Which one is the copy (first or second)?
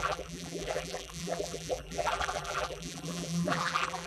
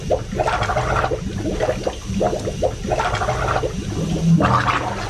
first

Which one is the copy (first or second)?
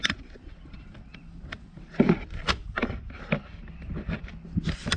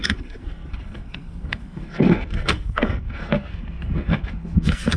second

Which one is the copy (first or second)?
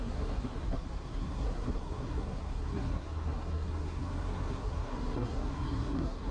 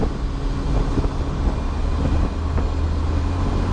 first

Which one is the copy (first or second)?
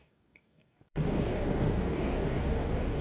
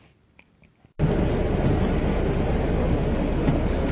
first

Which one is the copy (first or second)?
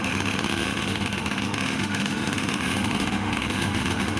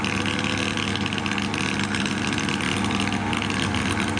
first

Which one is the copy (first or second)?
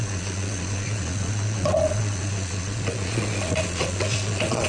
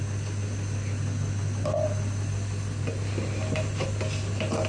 first